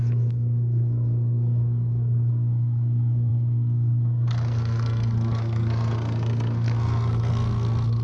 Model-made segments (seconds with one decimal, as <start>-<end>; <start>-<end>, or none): 0.0-8.0